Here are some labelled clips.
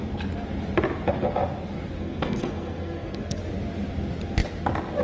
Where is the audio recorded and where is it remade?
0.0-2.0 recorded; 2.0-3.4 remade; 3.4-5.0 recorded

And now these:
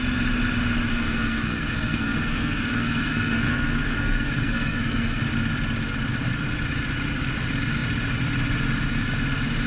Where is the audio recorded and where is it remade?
0.0-0.9 recorded; 0.9-5.2 remade; 5.2-9.7 recorded